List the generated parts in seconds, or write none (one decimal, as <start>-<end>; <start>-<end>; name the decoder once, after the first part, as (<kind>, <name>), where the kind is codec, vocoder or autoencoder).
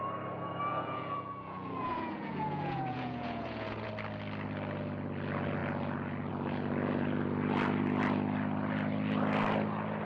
0.7-3.9 (vocoder, Vocos)